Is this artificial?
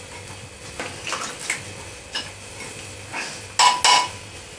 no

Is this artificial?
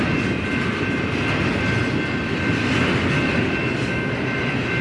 no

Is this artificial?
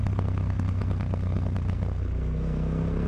yes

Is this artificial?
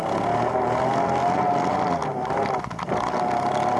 no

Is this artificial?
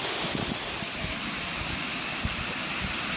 no